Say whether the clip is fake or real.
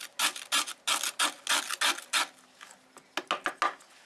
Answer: real